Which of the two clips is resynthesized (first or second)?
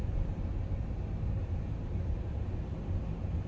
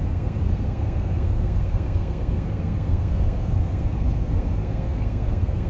second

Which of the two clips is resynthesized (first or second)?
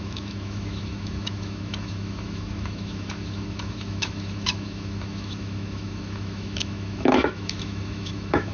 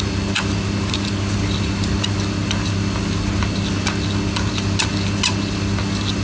first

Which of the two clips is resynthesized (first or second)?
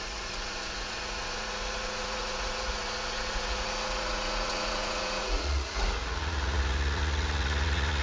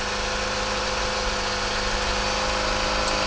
first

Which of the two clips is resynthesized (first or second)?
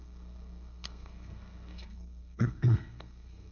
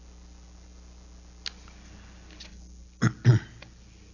first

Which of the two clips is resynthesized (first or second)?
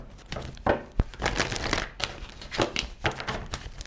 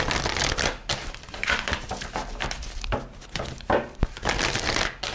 first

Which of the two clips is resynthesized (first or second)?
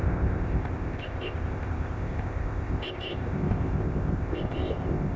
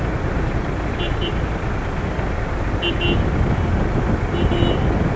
first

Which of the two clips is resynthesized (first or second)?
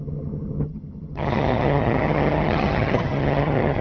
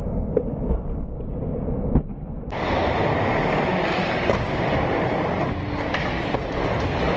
first